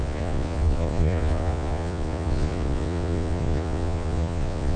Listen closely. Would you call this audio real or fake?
fake